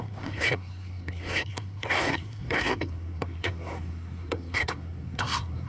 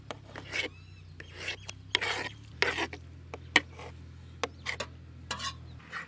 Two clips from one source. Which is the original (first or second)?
second